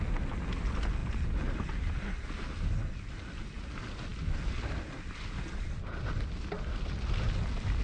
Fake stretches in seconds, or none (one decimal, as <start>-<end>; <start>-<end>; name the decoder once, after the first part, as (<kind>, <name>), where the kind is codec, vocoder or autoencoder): none

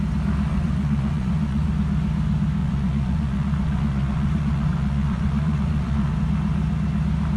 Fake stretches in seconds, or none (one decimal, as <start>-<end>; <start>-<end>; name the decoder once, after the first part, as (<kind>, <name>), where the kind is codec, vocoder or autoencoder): 0.5-1.7 (vocoder, Vocos); 2.6-6.1

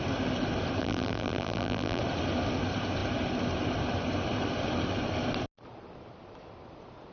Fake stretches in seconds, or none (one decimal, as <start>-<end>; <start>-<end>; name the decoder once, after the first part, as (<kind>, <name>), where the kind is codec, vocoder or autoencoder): 0.8-2.0 (vocoder, BigVGAN v2)

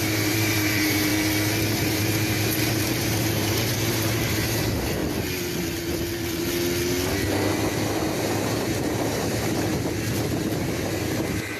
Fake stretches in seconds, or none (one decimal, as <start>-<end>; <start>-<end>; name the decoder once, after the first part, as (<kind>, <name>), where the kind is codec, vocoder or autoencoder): 0.0-1.1 (vocoder, BigVGAN v2); 1.7-5.0; 8.6-9.7; 10.6-11.6